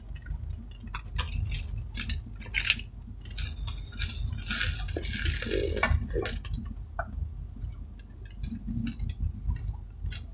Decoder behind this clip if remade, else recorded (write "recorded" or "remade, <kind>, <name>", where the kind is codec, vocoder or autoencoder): recorded